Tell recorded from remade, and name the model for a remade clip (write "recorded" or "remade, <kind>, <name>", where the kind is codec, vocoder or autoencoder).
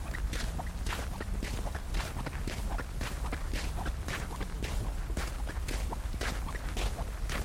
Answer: recorded